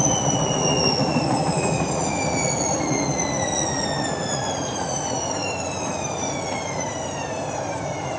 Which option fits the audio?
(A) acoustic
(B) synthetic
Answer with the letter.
B